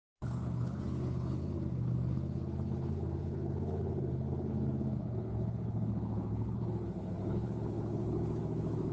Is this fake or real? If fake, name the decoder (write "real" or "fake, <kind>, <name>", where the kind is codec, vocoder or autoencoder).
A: fake, codec, HILCodec